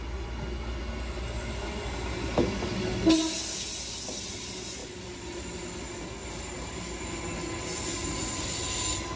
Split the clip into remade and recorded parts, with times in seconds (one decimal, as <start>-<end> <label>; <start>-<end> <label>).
0.0-4.8 recorded; 4.8-5.6 remade; 5.6-6.2 recorded; 6.2-6.8 remade; 6.8-7.9 recorded; 7.9-8.6 remade; 8.6-9.2 recorded